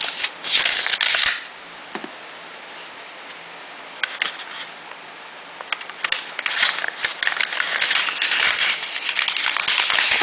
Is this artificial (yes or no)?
no